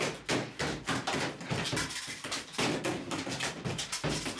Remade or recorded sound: recorded